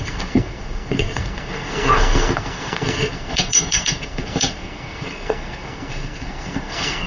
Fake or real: fake